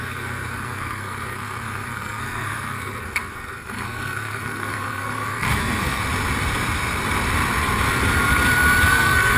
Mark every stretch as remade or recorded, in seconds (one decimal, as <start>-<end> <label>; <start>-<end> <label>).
0.0-6.0 remade; 6.0-8.9 recorded; 8.9-9.4 remade